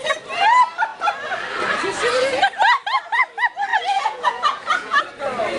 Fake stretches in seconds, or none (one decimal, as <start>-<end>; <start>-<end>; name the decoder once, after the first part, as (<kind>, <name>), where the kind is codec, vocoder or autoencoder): 3.7-5.0 (vocoder, Vocos)

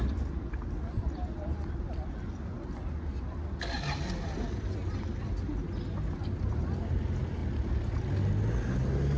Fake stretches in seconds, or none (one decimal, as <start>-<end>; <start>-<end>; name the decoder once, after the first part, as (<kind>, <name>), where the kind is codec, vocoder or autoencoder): none